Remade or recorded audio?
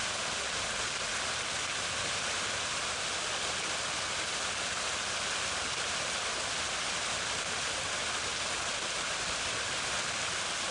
recorded